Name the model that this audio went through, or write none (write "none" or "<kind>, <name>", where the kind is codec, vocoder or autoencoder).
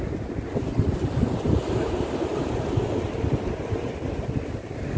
none